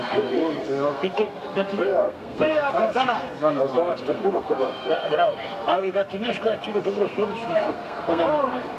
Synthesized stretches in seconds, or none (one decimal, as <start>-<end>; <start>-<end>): 0.0-8.8